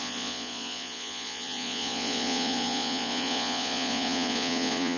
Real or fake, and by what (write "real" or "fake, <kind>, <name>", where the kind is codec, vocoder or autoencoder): fake, vocoder, Vocos